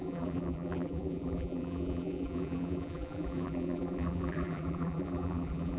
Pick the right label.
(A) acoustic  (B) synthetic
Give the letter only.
B